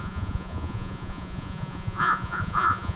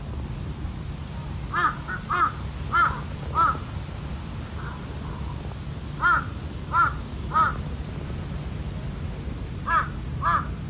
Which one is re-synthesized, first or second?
first